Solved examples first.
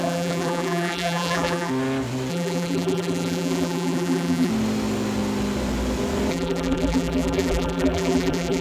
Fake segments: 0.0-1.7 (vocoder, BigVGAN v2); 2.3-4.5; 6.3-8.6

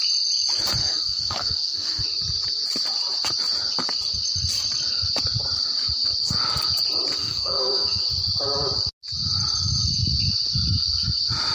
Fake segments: 0.8-2.0 (codec, SNAC); 7.2-8.0

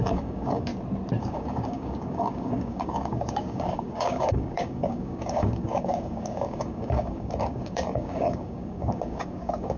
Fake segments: 0.0-0.7 (codec, DAC); 1.2-9.8

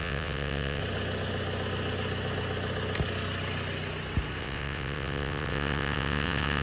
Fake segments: 0.0-0.8 (vocoder, WaveNeXt); 4.4-6.6

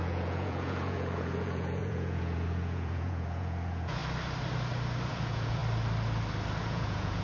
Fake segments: 0.0-4.0 (vocoder, Vocos); 5.1-5.6; 6.6-7.2

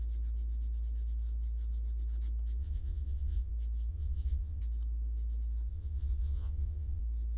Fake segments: 2.6-3.5 (vocoder, Vocos); 3.9-4.6; 5.7-7.0

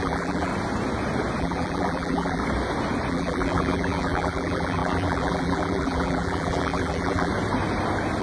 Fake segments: 0.0-0.5 (vocoder, BigVGAN v2); 1.4-2.4; 3.1-7.3